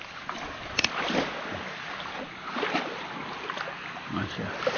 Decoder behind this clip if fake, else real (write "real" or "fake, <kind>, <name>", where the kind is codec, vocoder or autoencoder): real